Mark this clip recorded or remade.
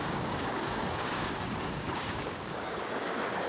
remade